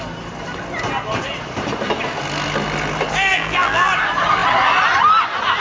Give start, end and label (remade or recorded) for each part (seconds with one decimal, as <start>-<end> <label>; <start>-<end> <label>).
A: 0.0-3.3 recorded; 3.3-3.9 remade; 3.9-5.6 recorded